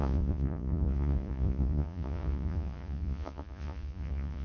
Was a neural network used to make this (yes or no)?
yes